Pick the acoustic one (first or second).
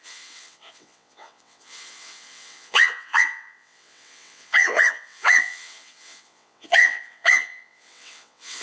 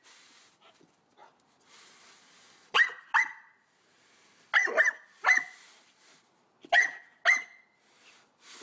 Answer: second